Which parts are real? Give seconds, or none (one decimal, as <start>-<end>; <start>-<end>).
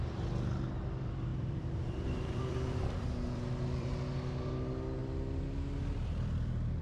0.0-1.3; 3.9-5.0